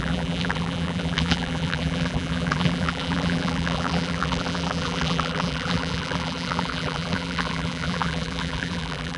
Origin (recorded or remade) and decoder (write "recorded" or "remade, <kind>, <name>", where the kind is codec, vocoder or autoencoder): remade, vocoder, BigVGAN v2